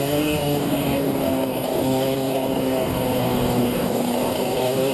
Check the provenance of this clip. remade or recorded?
remade